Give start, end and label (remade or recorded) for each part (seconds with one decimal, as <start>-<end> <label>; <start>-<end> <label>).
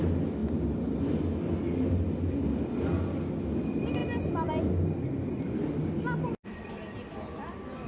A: 0.0-7.9 recorded